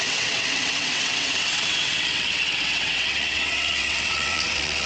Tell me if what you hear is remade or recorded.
remade